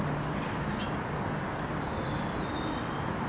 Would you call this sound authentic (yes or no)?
yes